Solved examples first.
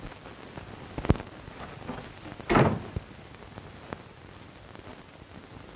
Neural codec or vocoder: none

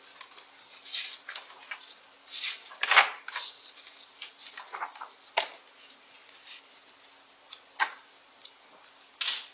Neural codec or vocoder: none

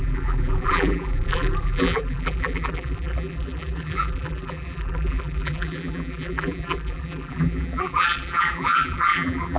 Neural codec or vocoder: vocoder, BigVGAN v2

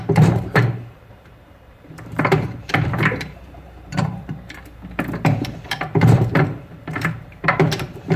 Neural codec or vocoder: vocoder, BigVGAN v2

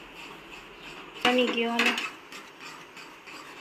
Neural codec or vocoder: none